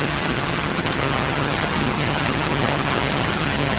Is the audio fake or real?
fake